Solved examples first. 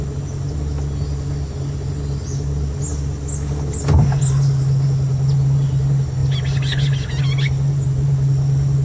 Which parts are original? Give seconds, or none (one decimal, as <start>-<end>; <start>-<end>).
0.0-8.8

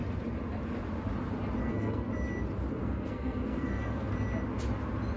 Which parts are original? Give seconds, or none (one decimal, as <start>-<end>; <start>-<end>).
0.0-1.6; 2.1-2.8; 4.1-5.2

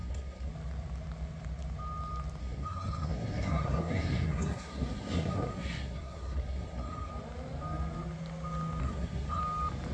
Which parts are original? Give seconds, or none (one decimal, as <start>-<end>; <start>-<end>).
0.5-2.4; 7.1-8.8; 9.4-9.9

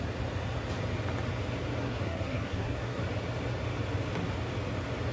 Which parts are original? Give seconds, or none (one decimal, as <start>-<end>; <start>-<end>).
0.0-1.8; 3.0-5.1

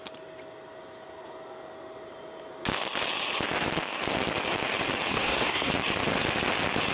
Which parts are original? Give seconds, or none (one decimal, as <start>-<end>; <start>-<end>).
0.0-5.1; 5.7-6.9